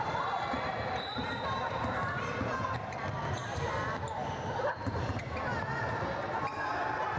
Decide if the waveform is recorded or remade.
recorded